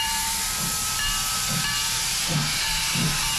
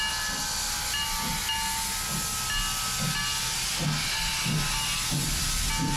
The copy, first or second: first